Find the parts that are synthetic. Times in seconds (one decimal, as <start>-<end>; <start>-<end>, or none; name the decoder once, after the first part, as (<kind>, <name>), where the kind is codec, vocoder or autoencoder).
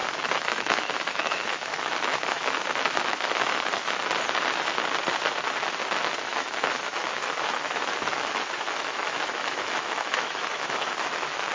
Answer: 0.0-4.0 (autoencoder, DAC-VAE); 6.3-11.5